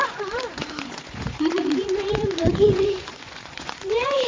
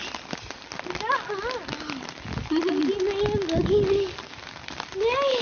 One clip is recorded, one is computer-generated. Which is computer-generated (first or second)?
first